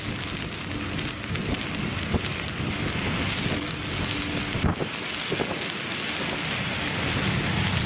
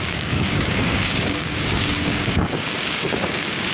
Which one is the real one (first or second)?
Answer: first